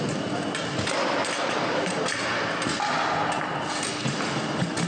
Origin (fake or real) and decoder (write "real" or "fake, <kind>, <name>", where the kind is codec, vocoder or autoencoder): real